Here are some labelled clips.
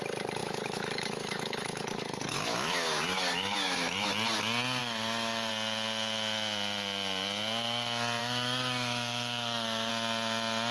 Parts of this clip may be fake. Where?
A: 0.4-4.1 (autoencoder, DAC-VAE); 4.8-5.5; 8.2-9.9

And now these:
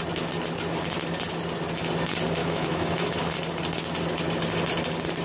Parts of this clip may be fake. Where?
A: 2.4-3.2 (autoencoder, DAC-VAE)

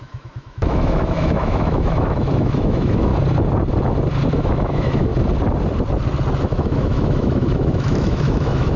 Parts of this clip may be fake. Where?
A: 0.0-3.1 (autoencoder, DAC-VAE); 4.4-5.1; 6.4-8.8

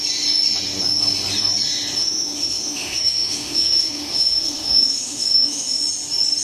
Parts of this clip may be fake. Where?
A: 2.0-5.8 (autoencoder, DAC-VAE)

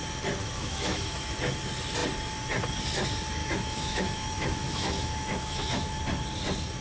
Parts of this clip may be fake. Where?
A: 0.4-1.3 (autoencoder, DAC-VAE); 3.4-6.0

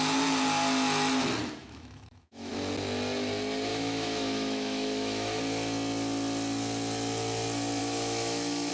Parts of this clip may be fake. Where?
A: 1.6-2.5 (autoencoder, DAC-VAE); 3.7-5.4; 7.8-8.7